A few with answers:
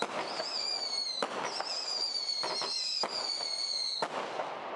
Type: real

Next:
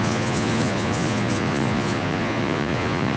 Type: fake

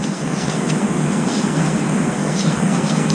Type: fake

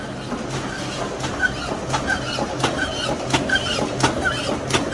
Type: real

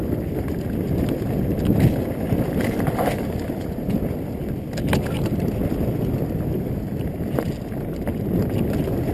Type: real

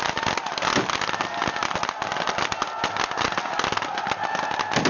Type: real